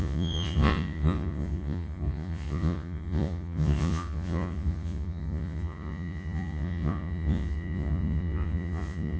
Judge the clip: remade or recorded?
remade